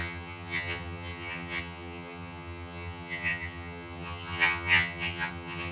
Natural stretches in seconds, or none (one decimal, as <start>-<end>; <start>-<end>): none

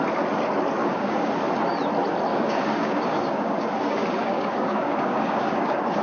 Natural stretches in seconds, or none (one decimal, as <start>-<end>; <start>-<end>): 0.0-0.8; 1.3-2.3